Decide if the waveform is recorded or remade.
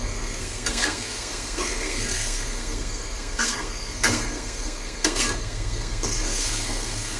remade